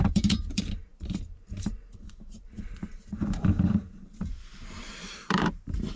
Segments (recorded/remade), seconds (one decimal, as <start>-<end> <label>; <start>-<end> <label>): 0.0-6.0 remade